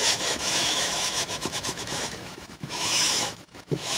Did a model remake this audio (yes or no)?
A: yes